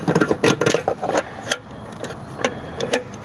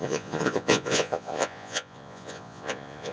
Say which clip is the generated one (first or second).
second